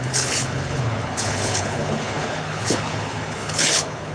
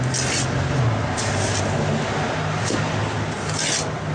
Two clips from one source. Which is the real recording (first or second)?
second